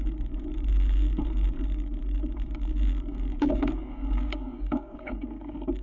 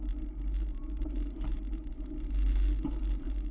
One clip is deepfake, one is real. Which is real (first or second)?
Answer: second